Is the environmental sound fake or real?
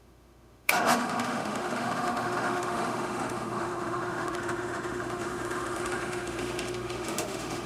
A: fake